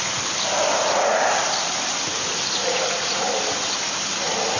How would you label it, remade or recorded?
recorded